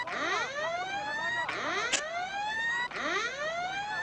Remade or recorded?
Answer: recorded